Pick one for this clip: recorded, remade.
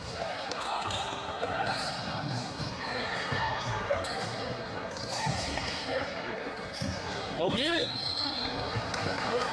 remade